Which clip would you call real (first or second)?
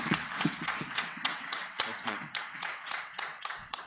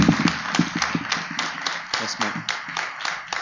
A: second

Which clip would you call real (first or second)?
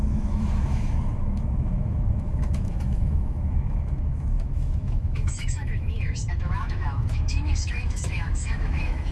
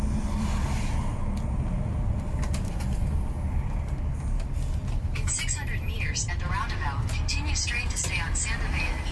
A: second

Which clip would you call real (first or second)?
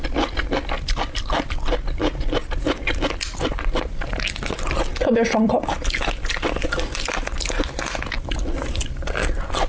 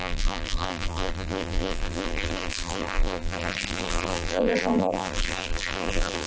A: first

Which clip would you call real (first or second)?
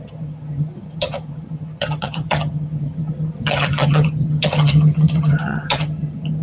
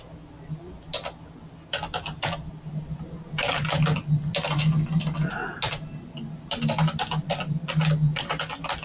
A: second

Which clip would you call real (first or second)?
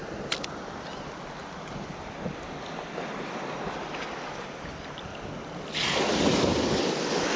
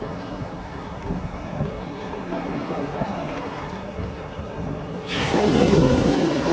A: first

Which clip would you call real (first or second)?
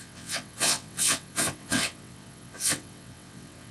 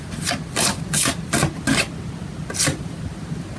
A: second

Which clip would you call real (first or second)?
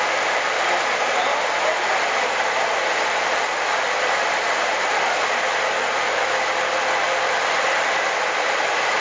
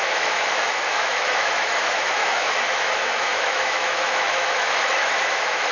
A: first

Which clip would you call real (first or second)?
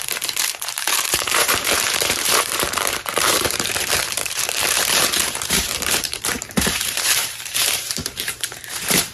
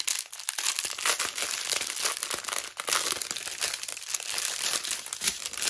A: second